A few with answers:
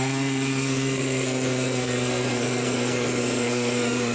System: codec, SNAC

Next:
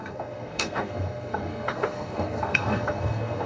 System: codec, SNAC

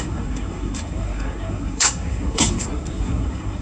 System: codec, SNAC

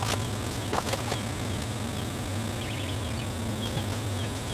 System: none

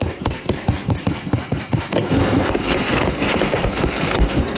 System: codec, SNAC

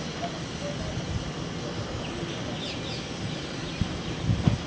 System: none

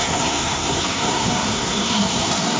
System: codec, SNAC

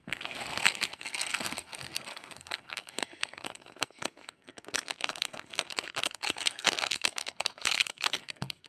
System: codec, SNAC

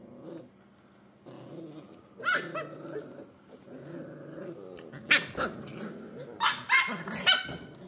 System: none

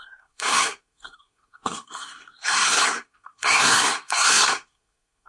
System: codec, SNAC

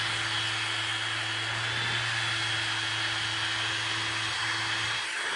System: none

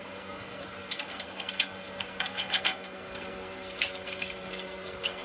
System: codec, SNAC